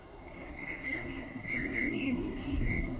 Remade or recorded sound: remade